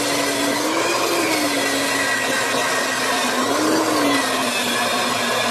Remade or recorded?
recorded